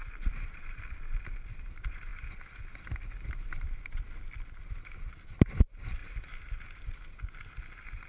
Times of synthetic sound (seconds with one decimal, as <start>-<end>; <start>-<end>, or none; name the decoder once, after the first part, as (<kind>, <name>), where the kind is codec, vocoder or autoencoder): 0.0-2.1 (vocoder, BigVGAN v2); 2.8-6.0

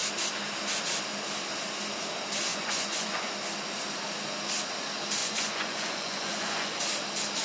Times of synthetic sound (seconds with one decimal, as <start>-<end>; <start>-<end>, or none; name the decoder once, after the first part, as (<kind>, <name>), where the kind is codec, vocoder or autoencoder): 2.5-3.3 (vocoder, Vocos); 5.2-6.8

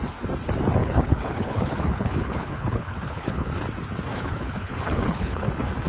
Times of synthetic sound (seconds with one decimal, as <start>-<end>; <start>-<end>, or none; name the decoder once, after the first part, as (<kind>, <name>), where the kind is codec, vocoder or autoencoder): 0.8-3.5 (codec, HILCodec); 4.1-5.5

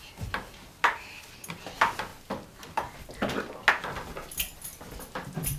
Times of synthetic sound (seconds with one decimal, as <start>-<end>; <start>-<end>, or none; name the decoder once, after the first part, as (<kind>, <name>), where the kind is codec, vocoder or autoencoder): none